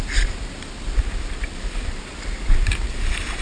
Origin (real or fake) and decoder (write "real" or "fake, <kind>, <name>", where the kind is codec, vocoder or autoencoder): real